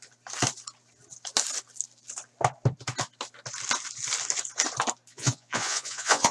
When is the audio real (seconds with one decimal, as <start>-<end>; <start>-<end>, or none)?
0.0-5.1